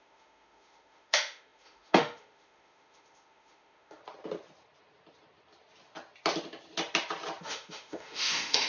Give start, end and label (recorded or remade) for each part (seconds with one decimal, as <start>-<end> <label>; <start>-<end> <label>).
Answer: 0.0-4.0 remade; 4.0-7.4 recorded; 7.4-8.7 remade

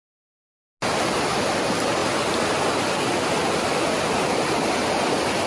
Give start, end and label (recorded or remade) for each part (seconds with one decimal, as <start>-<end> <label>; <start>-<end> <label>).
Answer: 0.0-5.5 recorded